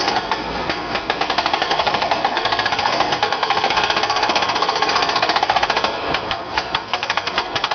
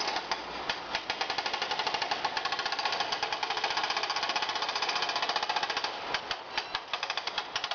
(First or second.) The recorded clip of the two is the second